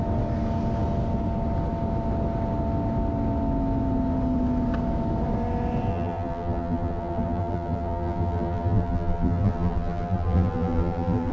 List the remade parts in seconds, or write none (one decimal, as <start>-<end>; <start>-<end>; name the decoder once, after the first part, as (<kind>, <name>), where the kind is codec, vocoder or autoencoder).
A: 5.9-11.3 (vocoder, BigVGAN v2)